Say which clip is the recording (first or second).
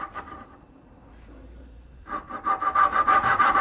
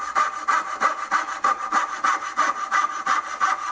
second